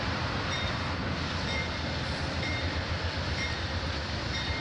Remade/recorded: remade